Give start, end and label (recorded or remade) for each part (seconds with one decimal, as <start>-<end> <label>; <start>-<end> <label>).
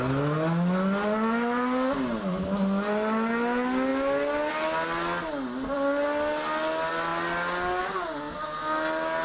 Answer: 0.0-9.2 recorded